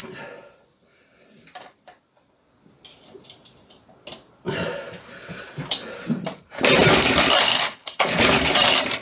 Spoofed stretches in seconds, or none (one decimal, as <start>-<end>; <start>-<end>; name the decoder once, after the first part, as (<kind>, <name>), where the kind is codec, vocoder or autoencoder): 7.5-8.2 (codec, HILCodec)